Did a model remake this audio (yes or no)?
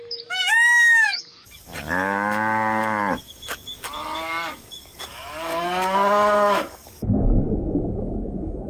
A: yes